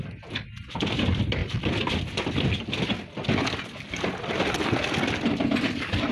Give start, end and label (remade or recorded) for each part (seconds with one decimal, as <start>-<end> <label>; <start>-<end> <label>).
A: 0.0-6.1 recorded